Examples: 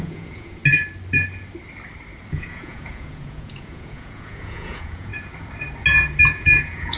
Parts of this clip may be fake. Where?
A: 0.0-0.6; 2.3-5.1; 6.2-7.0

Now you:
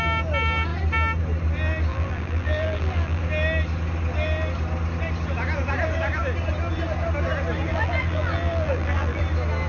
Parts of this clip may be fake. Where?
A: 1.9-3.2; 7.7-9.2

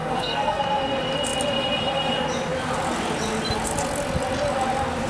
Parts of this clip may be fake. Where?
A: 0.0-0.6

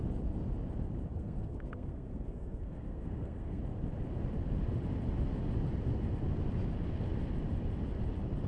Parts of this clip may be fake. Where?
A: 1.1-3.6

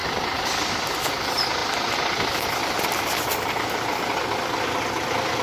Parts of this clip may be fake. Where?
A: none

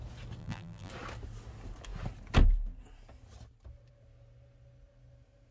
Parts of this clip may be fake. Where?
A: 0.4-0.9